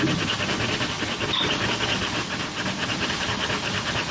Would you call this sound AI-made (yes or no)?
no